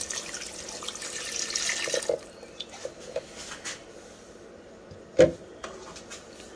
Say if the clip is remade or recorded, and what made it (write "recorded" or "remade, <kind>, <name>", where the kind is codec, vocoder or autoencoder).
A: recorded